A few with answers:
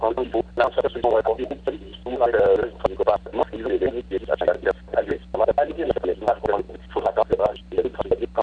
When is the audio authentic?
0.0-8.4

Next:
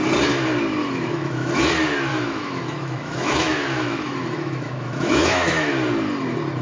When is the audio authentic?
0.0-0.8; 1.6-2.1; 5.7-6.6

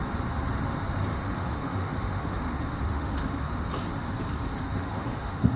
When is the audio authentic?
0.0-1.1; 3.7-4.8